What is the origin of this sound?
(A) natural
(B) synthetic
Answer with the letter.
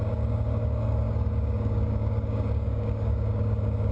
B